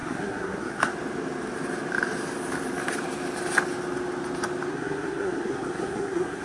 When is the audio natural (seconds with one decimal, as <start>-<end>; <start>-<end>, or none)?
0.9-4.7